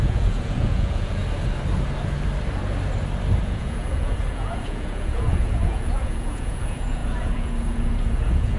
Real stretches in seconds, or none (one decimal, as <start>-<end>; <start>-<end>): 1.2-3.4